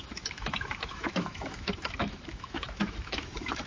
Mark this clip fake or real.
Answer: fake